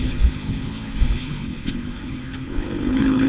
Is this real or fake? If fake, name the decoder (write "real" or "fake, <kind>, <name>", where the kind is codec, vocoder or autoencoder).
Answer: fake, codec, HILCodec